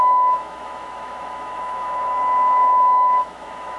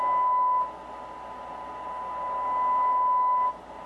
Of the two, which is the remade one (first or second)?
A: first